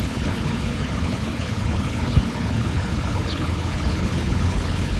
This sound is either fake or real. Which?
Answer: fake